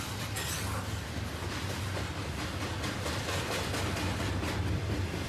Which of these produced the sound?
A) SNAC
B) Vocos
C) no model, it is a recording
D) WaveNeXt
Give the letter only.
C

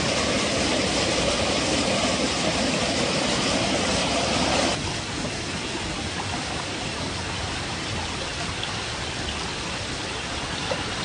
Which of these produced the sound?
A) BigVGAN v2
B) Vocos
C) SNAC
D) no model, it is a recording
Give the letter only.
D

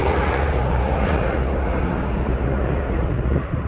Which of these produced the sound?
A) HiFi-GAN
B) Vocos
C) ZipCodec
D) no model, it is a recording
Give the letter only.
B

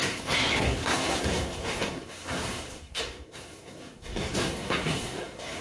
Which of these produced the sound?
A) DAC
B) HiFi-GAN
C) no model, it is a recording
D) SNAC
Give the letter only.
D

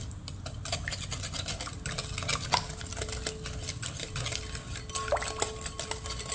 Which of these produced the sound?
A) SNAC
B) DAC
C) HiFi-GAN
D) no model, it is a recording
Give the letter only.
D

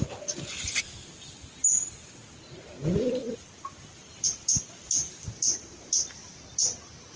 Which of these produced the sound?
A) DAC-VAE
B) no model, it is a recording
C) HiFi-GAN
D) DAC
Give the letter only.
B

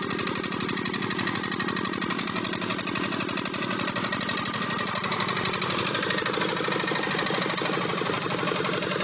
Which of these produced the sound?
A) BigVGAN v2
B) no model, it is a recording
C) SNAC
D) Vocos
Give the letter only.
B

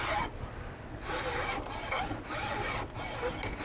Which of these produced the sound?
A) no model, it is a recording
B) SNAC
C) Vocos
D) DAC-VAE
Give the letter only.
A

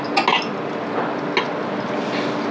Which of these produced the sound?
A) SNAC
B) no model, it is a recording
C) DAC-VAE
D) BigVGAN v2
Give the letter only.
B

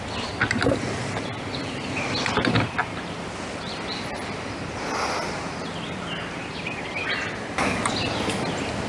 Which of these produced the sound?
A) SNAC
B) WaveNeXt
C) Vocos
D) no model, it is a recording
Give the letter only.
D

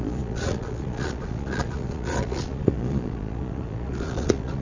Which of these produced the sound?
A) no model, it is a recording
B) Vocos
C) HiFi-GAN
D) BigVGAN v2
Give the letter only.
B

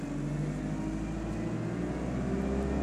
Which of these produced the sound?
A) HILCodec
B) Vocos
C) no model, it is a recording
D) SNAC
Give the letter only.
C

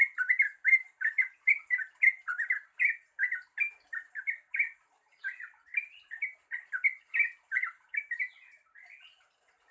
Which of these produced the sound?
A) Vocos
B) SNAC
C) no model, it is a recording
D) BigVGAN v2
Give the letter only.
C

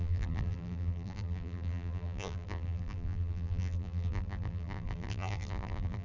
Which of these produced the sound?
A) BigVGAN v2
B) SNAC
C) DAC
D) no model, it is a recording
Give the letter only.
A